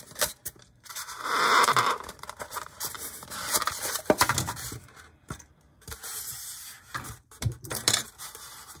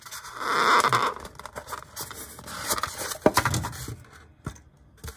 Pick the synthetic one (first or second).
first